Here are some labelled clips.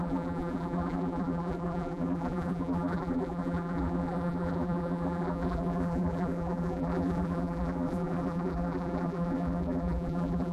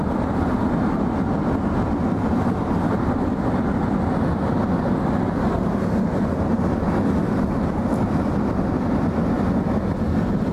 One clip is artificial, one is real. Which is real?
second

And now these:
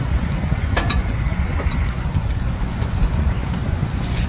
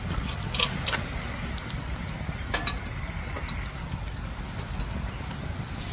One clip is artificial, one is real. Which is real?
second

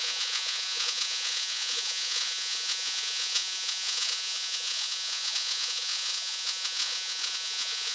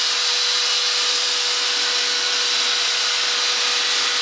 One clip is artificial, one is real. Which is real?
second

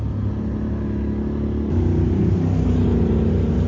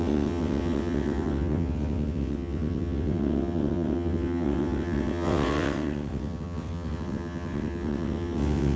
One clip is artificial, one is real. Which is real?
first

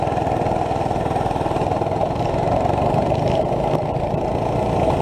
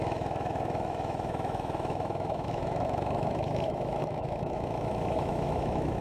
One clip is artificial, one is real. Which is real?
first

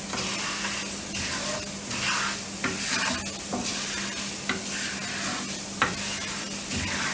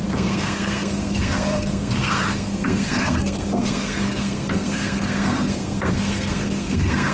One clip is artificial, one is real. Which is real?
first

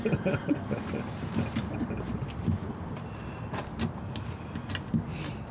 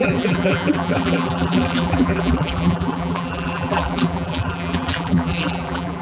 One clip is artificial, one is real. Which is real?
first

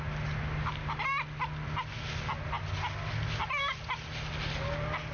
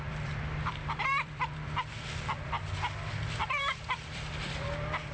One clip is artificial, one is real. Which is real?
first